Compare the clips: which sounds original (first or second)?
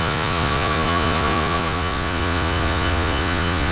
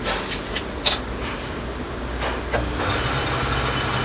second